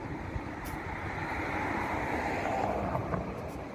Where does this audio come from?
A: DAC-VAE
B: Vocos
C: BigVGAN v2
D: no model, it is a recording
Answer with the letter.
D